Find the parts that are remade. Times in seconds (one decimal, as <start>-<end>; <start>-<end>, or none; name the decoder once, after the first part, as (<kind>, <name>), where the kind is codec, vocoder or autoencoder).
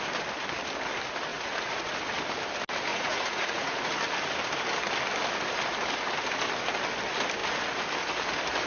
1.3-1.9 (vocoder, Vocos); 2.9-3.9